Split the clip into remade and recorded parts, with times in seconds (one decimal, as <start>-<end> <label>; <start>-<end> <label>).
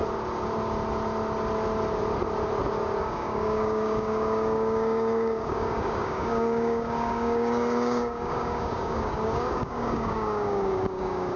0.0-3.0 recorded; 3.0-11.4 remade